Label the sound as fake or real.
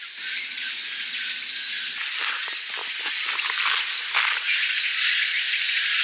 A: real